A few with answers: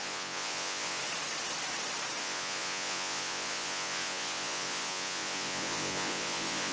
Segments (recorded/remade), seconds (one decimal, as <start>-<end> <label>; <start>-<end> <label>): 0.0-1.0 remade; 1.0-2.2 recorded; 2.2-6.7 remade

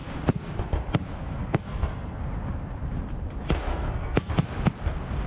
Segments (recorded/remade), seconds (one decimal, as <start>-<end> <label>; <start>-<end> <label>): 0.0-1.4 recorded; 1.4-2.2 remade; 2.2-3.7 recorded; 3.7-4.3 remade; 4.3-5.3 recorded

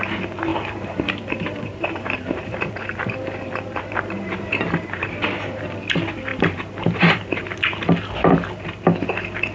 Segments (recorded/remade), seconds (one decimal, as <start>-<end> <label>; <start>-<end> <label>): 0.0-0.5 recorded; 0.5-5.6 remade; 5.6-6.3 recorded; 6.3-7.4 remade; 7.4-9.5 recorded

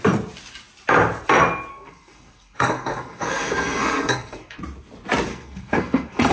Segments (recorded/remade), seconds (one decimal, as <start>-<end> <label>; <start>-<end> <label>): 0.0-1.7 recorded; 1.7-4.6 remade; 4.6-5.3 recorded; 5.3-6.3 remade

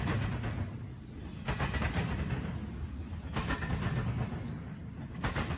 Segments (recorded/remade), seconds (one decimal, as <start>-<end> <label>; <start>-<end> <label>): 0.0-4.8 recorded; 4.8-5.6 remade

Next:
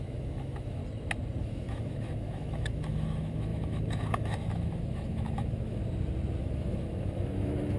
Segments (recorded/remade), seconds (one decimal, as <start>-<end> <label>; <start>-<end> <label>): 0.0-0.8 remade; 0.8-1.4 recorded; 1.4-5.8 remade; 5.8-6.4 recorded; 6.4-7.8 remade

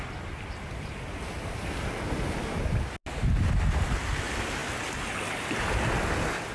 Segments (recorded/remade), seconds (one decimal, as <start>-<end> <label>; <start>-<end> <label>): 0.0-6.5 recorded

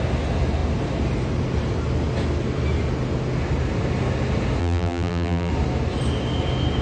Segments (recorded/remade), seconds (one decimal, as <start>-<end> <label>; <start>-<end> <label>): 0.0-4.6 recorded; 4.6-5.5 remade; 5.5-6.8 recorded